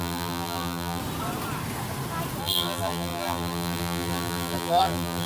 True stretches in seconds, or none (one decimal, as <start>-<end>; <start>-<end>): 1.0-2.4